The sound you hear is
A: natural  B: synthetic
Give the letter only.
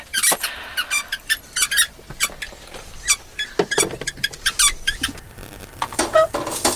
A